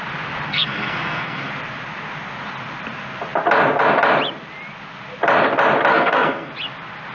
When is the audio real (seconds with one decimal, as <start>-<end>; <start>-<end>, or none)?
0.0-0.5; 1.5-5.9; 6.5-7.1